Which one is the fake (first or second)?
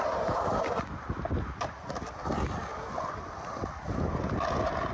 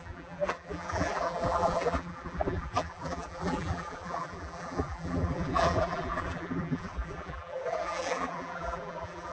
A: second